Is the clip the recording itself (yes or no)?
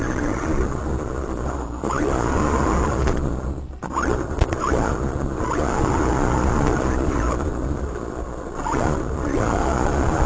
no